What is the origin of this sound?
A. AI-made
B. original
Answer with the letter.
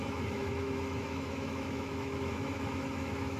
A